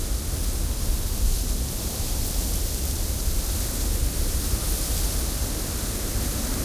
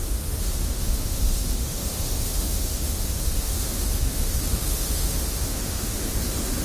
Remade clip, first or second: second